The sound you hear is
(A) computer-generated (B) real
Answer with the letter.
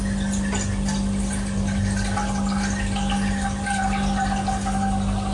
B